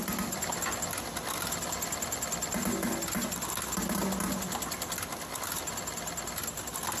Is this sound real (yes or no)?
yes